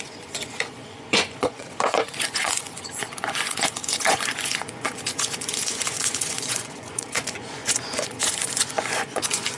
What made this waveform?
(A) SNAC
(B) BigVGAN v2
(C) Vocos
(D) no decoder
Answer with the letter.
C